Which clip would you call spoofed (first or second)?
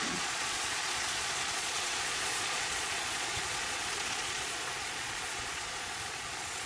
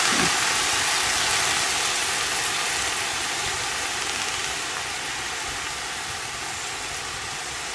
first